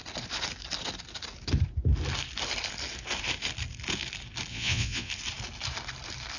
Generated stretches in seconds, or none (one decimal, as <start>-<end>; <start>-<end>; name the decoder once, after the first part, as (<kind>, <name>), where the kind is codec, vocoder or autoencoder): 4.5-5.1 (vocoder, Vocos)